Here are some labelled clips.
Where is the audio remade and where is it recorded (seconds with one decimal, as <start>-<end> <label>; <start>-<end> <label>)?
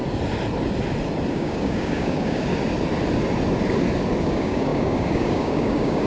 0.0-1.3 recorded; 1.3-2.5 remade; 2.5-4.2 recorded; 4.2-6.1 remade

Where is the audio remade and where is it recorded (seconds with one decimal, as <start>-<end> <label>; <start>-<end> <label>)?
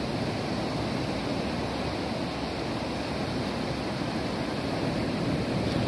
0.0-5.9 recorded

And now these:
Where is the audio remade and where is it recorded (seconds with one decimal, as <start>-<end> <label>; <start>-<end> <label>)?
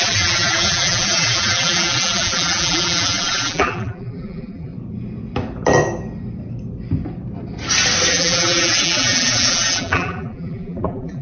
0.0-4.7 remade; 4.7-8.1 recorded; 8.1-11.2 remade